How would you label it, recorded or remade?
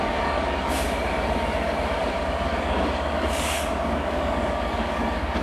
remade